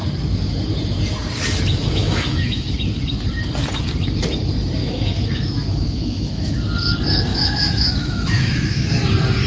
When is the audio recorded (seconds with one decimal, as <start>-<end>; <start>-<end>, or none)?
0.0-1.7; 2.7-4.8; 6.5-7.3; 8.9-9.5